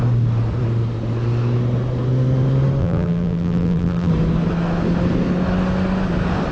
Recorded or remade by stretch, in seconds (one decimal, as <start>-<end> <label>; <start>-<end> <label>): 0.0-2.8 recorded; 2.8-4.1 remade; 4.1-6.5 recorded